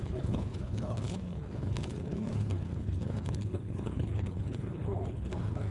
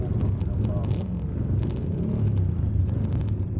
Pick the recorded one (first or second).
second